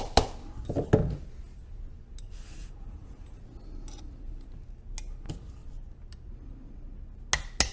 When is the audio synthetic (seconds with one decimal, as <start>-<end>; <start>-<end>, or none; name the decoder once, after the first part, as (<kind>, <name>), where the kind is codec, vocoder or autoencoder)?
2.6-3.4 (vocoder, Vocos)